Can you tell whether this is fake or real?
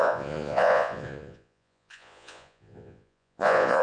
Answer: fake